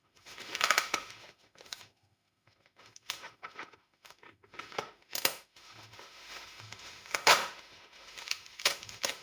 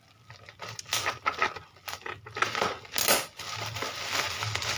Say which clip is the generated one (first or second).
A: first